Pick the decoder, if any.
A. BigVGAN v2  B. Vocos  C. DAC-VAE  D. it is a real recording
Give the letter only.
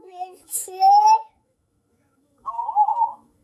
C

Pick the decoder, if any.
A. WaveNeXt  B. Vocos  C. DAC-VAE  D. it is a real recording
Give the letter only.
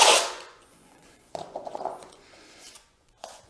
B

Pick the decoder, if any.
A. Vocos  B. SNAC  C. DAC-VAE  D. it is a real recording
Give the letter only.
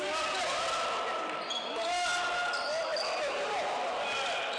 D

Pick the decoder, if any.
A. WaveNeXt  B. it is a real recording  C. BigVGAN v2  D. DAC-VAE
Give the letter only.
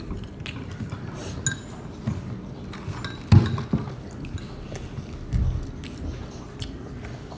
B